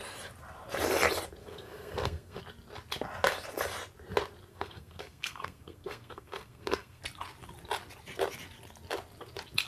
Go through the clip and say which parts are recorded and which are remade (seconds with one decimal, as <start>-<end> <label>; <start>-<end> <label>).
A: 0.0-1.4 recorded; 1.4-2.4 remade; 2.4-4.5 recorded; 4.5-7.0 remade; 7.0-9.7 recorded